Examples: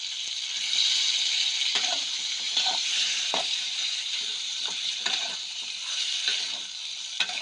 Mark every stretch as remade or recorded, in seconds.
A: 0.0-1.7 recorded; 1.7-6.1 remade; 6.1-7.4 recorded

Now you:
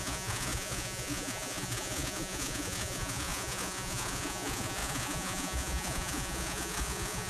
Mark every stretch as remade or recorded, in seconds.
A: 0.0-7.3 remade

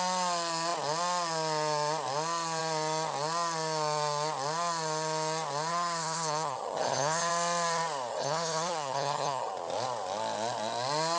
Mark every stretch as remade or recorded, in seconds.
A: 0.0-5.7 recorded; 5.7-7.3 remade; 7.3-8.1 recorded; 8.1-9.5 remade; 9.5-11.2 recorded

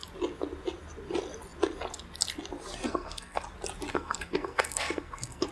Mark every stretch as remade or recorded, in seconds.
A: 0.0-2.9 recorded; 2.9-3.4 remade; 3.4-3.9 recorded; 3.9-5.5 remade